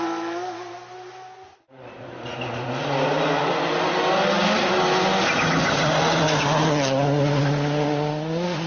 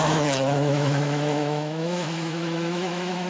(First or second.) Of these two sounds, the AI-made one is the second